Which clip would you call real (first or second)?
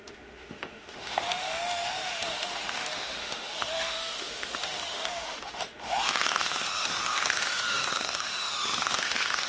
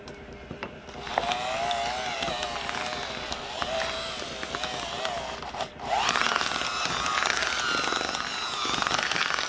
second